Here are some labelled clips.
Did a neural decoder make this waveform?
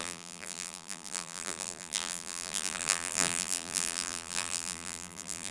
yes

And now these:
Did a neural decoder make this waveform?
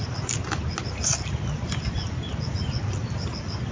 no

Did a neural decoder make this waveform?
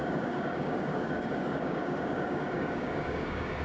yes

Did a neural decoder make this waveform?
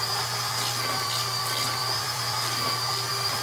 yes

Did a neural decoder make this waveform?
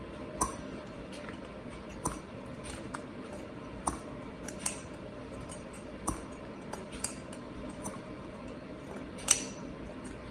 yes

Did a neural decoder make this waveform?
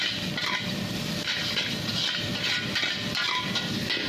no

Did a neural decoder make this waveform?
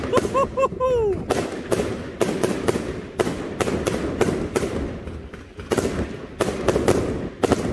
no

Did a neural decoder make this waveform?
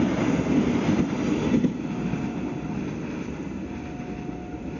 no